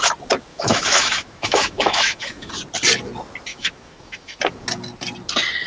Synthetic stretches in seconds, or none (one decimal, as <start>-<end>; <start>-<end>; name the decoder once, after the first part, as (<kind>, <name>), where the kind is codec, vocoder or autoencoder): 0.5-2.5 (autoencoder, DAC-VAE); 3.5-4.4